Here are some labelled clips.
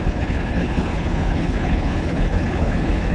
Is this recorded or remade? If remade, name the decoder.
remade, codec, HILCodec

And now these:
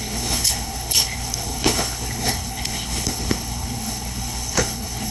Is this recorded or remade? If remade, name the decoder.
remade, codec, HILCodec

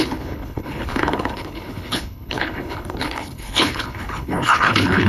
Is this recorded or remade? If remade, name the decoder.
remade, codec, HILCodec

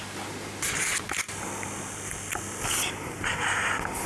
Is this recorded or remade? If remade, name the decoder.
recorded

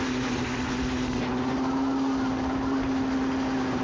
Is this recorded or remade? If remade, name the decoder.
recorded